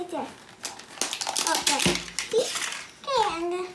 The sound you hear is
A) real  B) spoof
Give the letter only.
A